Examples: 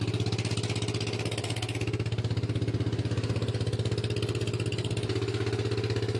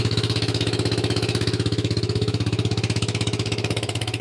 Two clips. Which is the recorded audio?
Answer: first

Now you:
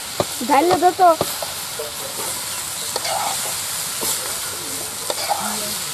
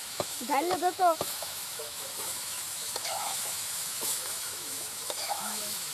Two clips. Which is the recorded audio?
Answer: first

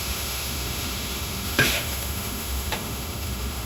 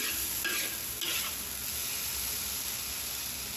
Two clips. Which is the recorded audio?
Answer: second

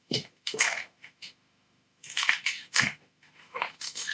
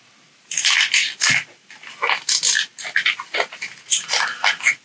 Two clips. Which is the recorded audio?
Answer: second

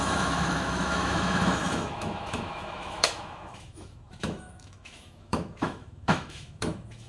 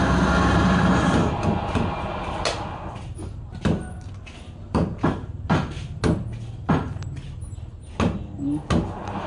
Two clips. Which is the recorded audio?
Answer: second